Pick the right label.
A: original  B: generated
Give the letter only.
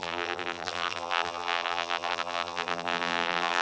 B